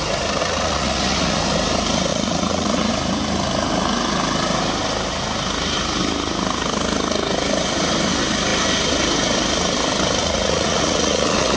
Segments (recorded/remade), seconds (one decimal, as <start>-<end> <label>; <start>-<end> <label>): 0.0-0.4 recorded; 0.4-1.4 remade; 1.4-2.1 recorded; 2.1-2.9 remade; 2.9-10.2 recorded; 10.2-11.6 remade